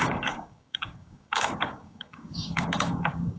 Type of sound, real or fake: fake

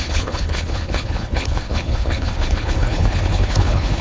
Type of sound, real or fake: fake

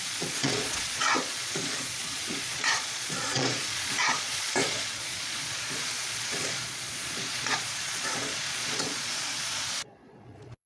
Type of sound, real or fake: fake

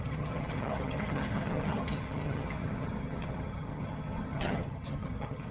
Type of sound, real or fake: fake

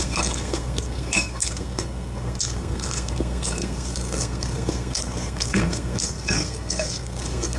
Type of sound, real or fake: fake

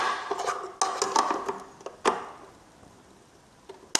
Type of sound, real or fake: real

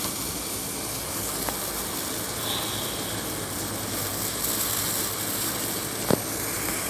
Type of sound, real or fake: real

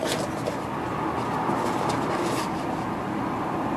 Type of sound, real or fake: real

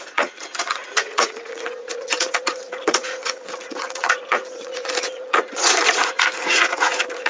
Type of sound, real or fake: fake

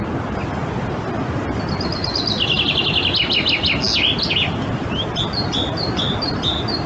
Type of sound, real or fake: real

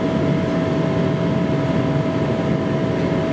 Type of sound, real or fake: real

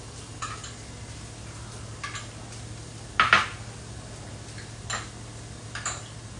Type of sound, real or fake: real